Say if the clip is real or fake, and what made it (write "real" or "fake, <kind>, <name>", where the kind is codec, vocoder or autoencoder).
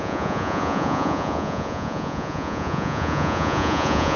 fake, vocoder, Vocos